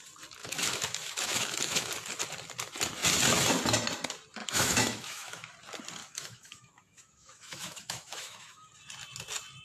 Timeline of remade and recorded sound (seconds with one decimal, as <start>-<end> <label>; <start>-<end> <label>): 0.0-0.4 recorded; 0.4-1.9 remade; 1.9-4.4 recorded; 4.4-5.5 remade; 5.5-6.0 recorded; 6.0-8.7 remade; 8.7-9.6 recorded